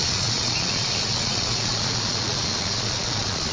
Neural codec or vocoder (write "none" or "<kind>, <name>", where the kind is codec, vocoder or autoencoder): vocoder, Vocos